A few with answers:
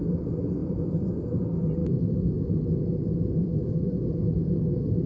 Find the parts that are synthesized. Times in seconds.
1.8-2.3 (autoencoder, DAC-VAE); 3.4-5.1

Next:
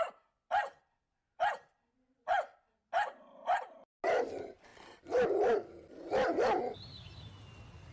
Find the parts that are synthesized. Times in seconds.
none

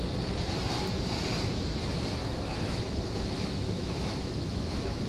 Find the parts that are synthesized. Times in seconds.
2.2-5.1 (autoencoder, DAC-VAE)

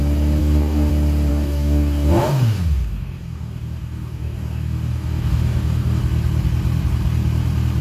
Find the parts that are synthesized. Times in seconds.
0.4-0.9 (codec, DAC); 1.3-6.0